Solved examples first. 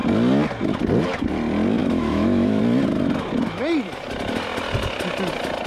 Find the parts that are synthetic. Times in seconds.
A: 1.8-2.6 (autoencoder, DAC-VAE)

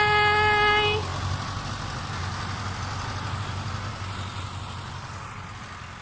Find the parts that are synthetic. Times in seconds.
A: none

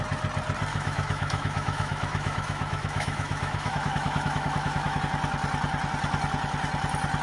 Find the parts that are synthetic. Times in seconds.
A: 0.7-5.0 (autoencoder, DAC-VAE)

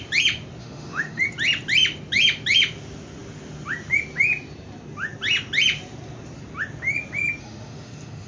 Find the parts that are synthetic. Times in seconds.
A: 0.6-1.2 (autoencoder, DAC-VAE); 7.4-8.3

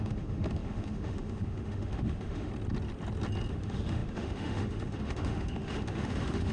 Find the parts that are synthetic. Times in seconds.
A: 0.0-2.5 (autoencoder, DAC-VAE); 3.5-6.5

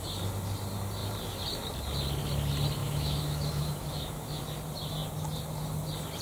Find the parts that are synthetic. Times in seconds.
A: 2.8-4.4 (autoencoder, DAC-VAE)

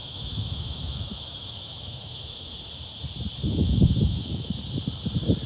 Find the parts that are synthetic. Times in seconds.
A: 0.0-2.6 (autoencoder, DAC-VAE); 3.4-4.5

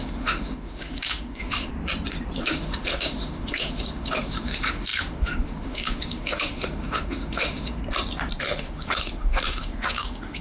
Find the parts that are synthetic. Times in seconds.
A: 0.0-1.7 (autoencoder, DAC-VAE); 2.4-7.8; 8.4-10.4